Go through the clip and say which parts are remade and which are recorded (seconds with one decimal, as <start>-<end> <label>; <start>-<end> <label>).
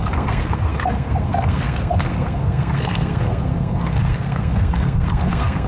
0.0-5.7 remade